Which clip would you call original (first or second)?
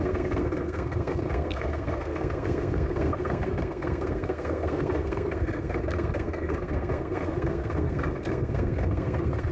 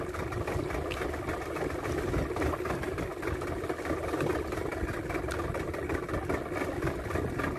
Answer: second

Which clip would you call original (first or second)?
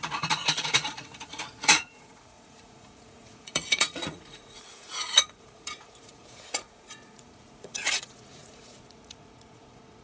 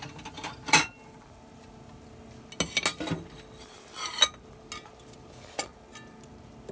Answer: second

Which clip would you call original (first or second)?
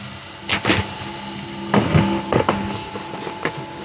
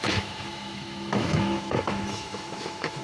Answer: first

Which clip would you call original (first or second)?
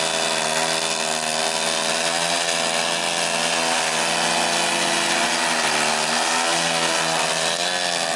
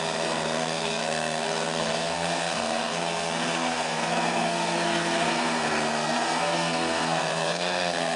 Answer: first